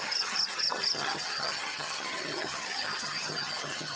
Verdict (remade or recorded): remade